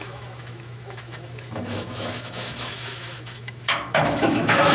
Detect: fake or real fake